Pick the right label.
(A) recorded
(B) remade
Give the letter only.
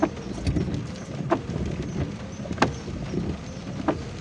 A